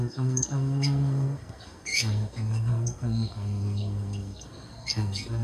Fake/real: fake